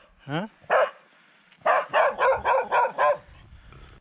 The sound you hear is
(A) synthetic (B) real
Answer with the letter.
B